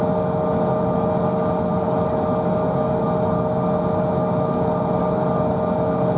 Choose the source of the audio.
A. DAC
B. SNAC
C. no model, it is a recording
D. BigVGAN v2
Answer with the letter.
C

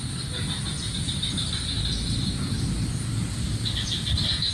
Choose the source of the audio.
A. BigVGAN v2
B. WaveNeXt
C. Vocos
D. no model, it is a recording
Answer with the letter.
D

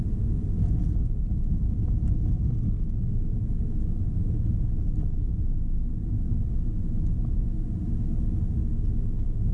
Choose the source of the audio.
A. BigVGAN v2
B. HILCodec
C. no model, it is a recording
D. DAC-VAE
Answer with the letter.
C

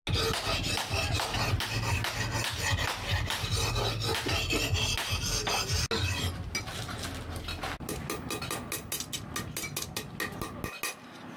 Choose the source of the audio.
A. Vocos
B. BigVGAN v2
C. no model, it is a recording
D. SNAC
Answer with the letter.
C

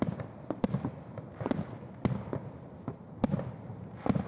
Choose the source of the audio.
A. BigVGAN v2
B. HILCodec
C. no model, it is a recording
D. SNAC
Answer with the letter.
C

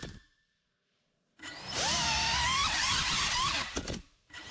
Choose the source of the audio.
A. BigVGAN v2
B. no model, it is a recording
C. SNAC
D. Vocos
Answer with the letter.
A